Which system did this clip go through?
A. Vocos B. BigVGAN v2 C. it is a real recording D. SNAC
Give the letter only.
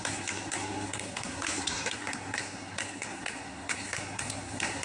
D